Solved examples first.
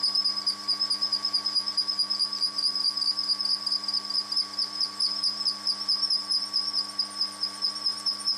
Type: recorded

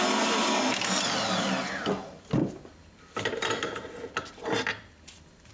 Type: recorded